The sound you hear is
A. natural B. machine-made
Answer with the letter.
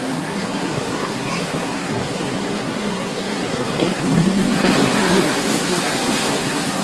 B